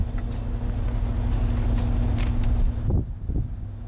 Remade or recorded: recorded